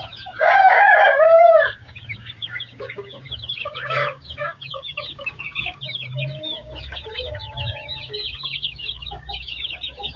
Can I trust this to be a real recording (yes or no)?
no